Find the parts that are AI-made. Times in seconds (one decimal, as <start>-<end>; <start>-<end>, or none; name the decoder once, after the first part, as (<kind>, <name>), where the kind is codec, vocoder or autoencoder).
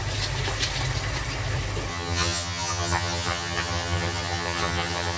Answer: 1.9-5.2 (vocoder, HiFi-GAN)